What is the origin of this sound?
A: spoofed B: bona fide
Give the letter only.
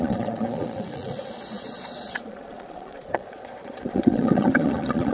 A